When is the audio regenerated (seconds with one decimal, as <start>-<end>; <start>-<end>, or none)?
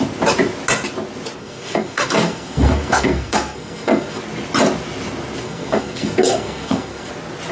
1.4-4.2; 5.4-7.1